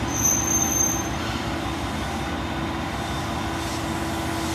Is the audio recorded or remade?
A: recorded